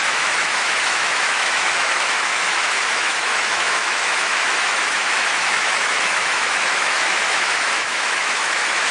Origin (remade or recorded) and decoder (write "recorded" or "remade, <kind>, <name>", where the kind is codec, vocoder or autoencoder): remade, autoencoder, DAC-VAE